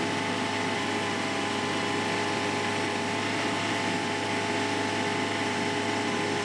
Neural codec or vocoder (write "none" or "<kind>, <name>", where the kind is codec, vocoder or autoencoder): none